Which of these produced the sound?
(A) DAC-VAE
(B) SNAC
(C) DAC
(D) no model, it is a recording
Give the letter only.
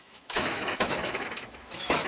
A